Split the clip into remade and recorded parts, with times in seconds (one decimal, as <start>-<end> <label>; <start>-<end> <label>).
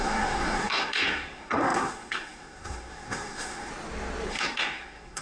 0.0-3.7 remade; 3.7-4.3 recorded; 4.3-5.2 remade